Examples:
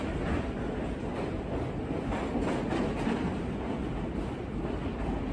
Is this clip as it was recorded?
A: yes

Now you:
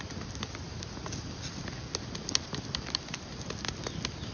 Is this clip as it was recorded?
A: yes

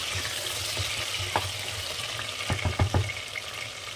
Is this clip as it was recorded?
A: yes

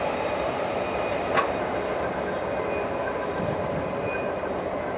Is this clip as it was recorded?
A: yes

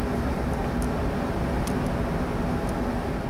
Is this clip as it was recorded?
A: yes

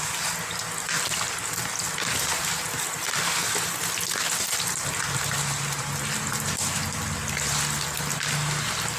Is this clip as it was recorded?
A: yes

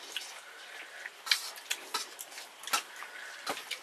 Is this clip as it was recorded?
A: yes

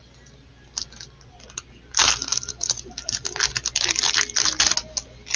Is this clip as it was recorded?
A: yes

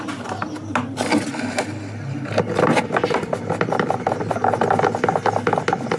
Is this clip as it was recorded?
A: yes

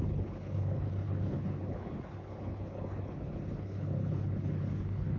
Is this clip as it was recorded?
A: no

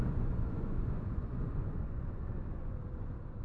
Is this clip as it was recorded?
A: no